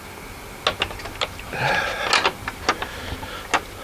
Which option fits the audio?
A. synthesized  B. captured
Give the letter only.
B